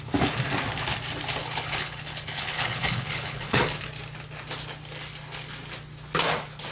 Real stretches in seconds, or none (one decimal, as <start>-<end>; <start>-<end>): 0.0-1.4; 3.6-6.7